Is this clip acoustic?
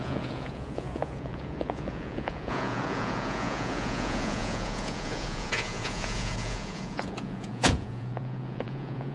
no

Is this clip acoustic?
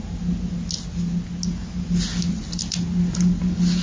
yes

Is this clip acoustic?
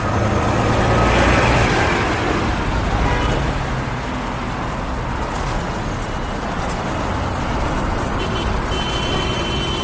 yes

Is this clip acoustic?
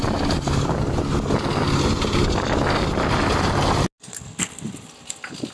yes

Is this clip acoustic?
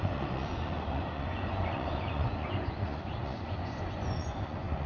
no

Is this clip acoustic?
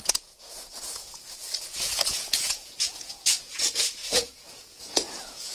no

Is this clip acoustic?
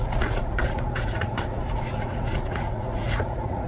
no